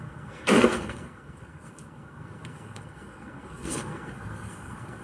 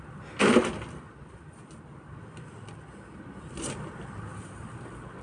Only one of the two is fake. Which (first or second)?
first